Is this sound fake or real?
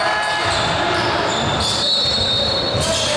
real